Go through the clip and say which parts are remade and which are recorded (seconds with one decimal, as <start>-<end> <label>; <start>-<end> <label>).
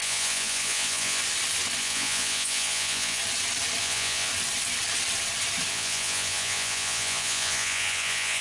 0.0-1.2 remade; 1.2-1.8 recorded; 1.8-3.2 remade; 3.2-3.8 recorded; 3.8-4.3 remade; 4.3-5.7 recorded; 5.7-8.4 remade